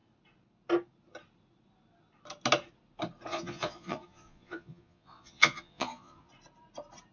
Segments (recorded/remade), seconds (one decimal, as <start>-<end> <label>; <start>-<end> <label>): 0.0-3.3 recorded; 3.3-6.3 remade; 6.3-7.1 recorded